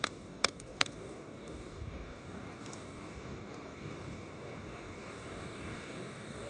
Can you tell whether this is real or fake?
fake